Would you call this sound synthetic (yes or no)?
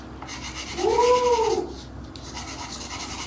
no